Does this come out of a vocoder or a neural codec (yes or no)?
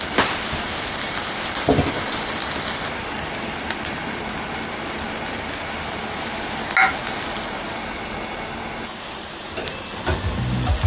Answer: no